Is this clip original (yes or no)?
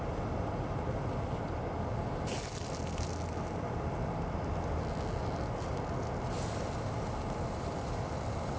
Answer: yes